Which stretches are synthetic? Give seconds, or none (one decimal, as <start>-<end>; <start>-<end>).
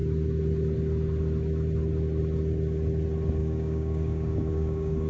3.4-5.1